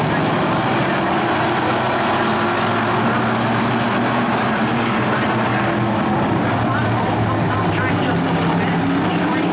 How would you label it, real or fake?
real